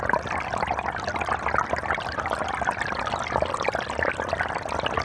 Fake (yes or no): no